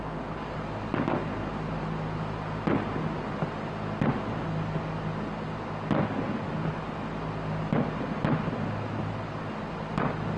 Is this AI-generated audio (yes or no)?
no